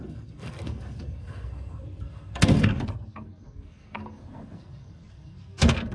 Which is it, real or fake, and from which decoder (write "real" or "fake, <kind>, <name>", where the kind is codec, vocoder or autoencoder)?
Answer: fake, codec, SNAC